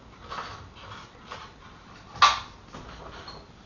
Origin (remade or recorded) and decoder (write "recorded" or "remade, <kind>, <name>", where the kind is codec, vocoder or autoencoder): recorded